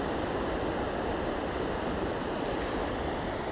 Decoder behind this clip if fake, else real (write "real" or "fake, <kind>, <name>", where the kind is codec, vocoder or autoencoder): real